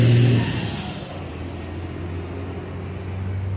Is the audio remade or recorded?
recorded